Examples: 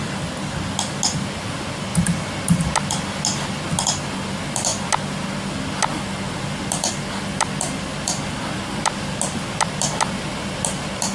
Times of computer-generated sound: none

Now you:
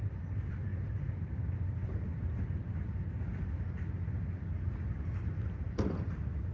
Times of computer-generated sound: none

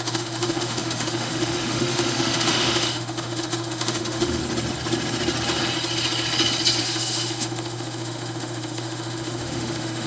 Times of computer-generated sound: 0.0-4.4; 6.8-10.1

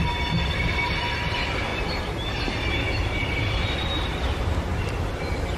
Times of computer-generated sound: none

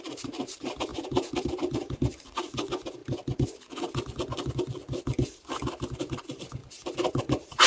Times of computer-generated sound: 0.0-3.0; 5.0-6.6; 7.1-7.7

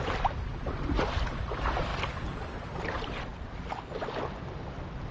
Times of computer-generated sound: none